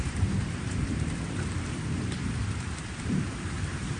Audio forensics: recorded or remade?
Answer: remade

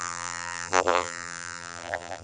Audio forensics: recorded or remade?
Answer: remade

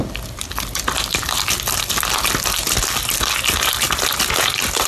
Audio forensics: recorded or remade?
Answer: recorded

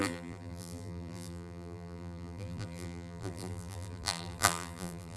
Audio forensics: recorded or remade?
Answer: remade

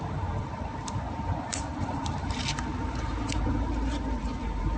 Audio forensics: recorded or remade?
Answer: remade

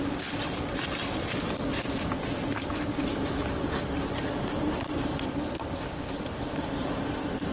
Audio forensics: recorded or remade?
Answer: recorded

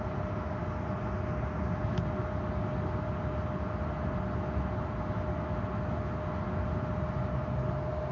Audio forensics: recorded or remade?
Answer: recorded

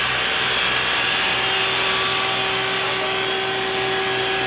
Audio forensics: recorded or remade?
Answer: recorded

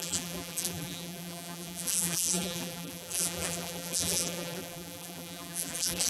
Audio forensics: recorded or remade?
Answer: remade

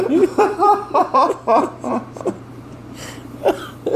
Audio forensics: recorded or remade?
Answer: remade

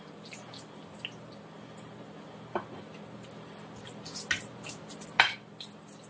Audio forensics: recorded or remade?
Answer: recorded